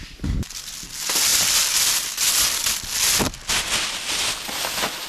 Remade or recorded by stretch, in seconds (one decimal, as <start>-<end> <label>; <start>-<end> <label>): 0.0-5.1 recorded